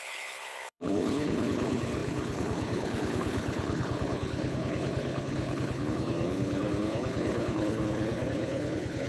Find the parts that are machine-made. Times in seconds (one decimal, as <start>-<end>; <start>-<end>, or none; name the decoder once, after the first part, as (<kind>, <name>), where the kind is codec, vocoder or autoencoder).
0.0-9.1 (codec, HILCodec)